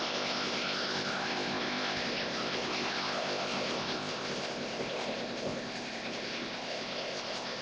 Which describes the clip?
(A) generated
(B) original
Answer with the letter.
A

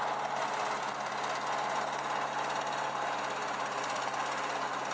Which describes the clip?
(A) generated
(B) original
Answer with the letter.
B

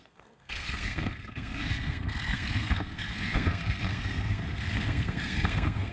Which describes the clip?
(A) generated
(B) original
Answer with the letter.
A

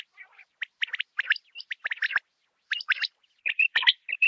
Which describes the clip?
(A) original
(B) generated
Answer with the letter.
A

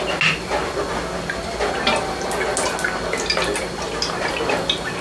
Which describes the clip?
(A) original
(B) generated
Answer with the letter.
A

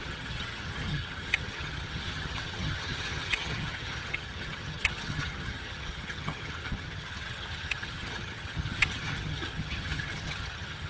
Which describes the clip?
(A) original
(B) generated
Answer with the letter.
B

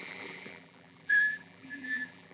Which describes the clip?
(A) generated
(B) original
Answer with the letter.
A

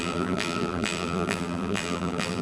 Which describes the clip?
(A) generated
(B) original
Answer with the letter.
A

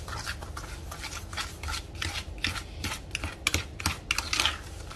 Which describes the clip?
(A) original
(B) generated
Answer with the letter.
A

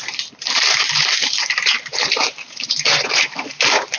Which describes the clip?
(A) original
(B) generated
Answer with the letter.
B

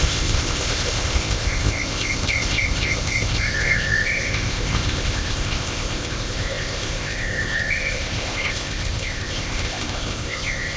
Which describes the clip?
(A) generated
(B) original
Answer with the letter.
A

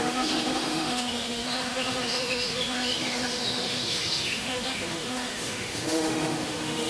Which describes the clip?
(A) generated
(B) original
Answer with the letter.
A